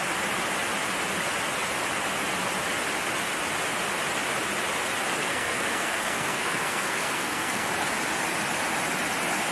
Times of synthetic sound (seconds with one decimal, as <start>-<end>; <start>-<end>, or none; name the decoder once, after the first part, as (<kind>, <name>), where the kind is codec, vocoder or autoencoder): 5.2-7.7 (codec, SNAC)